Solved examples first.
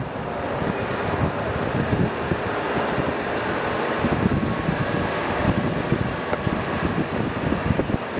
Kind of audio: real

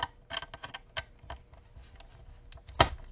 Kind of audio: real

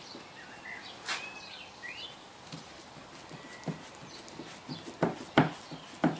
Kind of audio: real